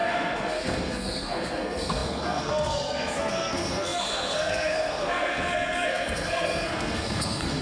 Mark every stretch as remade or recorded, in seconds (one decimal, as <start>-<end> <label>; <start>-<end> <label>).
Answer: 0.0-7.6 remade